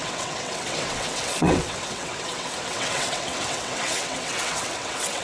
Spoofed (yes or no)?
yes